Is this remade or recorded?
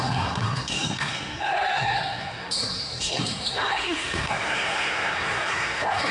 remade